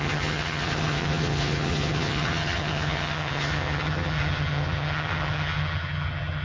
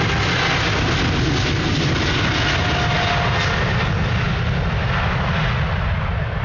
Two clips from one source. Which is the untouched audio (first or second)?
second